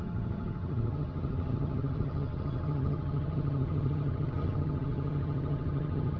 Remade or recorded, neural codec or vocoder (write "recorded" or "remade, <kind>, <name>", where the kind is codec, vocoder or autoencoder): remade, vocoder, HiFi-GAN